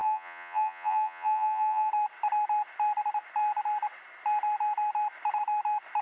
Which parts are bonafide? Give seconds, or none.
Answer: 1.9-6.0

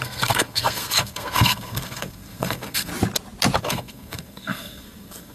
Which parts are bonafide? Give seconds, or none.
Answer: 2.9-3.6